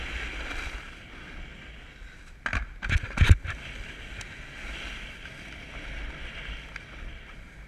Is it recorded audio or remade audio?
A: recorded